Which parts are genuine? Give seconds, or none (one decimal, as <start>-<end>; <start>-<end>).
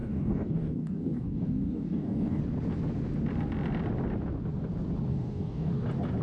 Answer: 2.4-5.1; 5.7-6.2